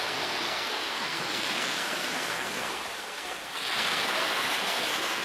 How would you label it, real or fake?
fake